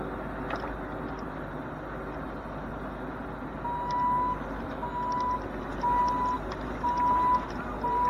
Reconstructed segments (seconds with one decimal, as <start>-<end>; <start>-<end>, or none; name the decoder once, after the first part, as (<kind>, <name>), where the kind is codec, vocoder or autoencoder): none